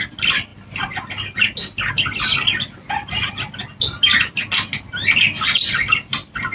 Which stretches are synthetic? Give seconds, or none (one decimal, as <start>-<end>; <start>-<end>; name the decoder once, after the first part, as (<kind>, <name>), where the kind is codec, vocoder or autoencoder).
none